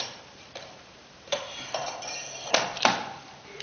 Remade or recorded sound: remade